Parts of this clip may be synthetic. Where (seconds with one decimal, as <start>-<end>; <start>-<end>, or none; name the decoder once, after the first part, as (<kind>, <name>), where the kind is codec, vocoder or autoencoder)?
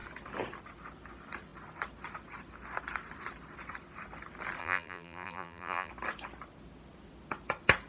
4.6-5.9 (vocoder, BigVGAN v2)